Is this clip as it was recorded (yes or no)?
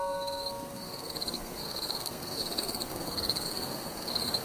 no